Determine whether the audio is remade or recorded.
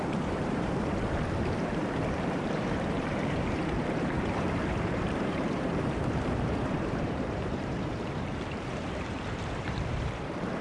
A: remade